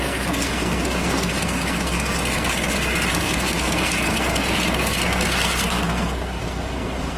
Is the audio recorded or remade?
remade